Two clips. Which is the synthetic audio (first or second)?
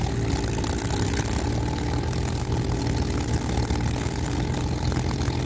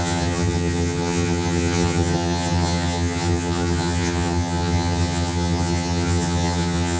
second